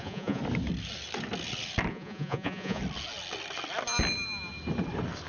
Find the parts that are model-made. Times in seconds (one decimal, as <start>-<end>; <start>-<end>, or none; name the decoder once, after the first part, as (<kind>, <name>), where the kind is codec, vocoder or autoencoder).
0.0-0.4 (vocoder, Vocos); 1.9-2.8

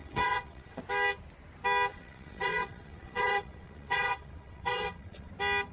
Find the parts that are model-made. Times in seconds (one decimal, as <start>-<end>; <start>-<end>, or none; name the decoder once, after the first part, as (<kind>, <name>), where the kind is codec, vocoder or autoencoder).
0.0-0.8 (vocoder, WaveNeXt); 1.9-5.3

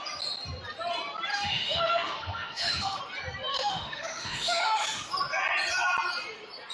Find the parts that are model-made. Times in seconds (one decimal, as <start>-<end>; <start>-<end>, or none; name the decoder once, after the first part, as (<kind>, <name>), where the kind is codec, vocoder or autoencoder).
1.3-3.0 (autoencoder, DAC-VAE); 3.5-5.1

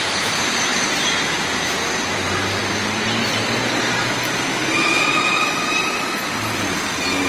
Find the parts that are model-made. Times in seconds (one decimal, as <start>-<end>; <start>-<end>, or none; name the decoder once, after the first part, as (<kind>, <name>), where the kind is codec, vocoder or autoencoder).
0.0-4.6 (vocoder, BigVGAN v2)

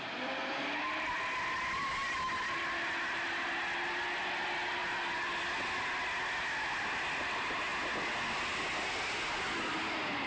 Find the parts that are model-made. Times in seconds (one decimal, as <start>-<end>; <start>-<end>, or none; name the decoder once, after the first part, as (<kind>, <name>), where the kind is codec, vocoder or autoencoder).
none

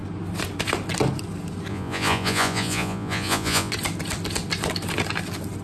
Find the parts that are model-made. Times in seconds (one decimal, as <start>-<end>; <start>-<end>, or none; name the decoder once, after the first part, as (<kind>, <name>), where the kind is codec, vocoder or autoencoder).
1.7-3.7 (vocoder, Vocos)

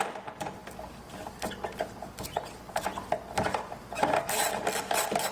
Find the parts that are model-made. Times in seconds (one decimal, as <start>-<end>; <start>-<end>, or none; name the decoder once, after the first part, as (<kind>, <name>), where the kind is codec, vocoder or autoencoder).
none

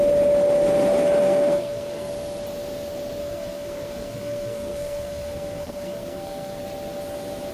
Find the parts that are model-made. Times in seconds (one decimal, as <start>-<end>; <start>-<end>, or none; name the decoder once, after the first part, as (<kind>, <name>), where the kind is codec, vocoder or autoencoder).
1.2-2.1 (codec, SNAC); 3.2-6.6